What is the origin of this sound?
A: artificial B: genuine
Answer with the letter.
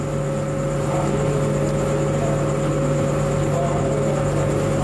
B